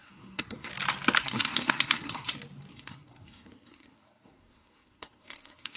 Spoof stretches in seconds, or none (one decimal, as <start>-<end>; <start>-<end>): 0.0-0.7; 1.2-2.3; 2.7-5.8